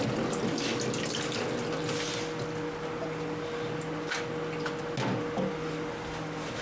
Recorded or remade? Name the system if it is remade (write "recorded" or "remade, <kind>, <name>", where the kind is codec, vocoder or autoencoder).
recorded